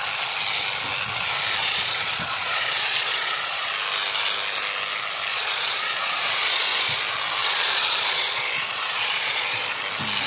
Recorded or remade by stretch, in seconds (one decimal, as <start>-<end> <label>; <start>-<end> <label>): 0.0-1.6 recorded; 1.6-3.7 remade; 3.7-5.3 recorded; 5.3-7.0 remade; 7.0-7.4 recorded; 7.4-9.8 remade; 9.8-10.3 recorded